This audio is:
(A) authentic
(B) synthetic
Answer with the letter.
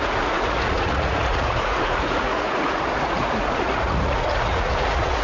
B